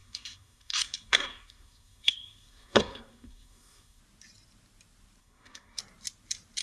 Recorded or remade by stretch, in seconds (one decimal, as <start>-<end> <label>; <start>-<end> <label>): 0.0-4.0 remade; 4.0-5.2 recorded; 5.2-5.8 remade; 5.8-6.6 recorded